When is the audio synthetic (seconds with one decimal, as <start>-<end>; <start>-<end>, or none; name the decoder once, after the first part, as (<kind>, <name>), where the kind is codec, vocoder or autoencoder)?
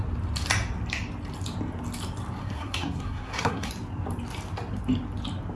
2.4-3.7 (codec, SNAC)